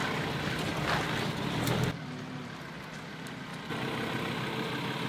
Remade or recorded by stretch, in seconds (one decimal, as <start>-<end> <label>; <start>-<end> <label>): 0.0-3.5 recorded; 3.5-4.3 remade; 4.3-5.1 recorded